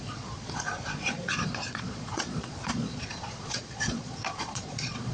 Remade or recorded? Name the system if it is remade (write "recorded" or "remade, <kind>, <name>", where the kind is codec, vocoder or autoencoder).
remade, vocoder, Vocos